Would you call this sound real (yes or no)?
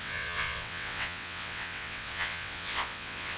no